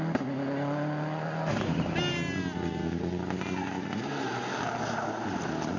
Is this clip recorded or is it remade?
recorded